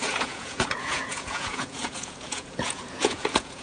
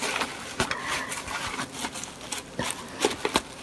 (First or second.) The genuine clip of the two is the second